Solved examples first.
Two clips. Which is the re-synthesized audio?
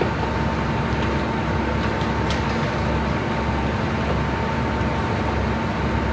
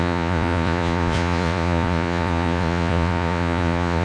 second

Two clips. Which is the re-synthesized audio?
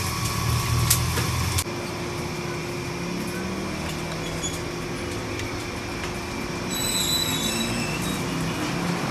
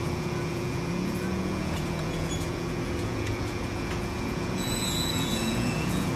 second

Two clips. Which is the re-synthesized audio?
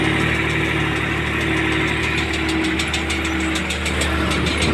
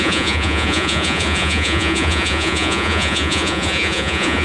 second